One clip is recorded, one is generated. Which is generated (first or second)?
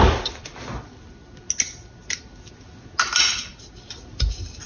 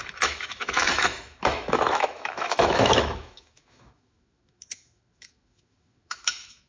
second